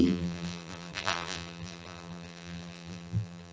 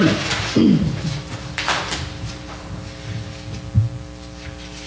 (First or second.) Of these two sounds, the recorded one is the second